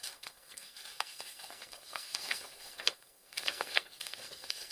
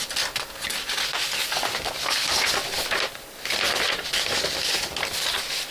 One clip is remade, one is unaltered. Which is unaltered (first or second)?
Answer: second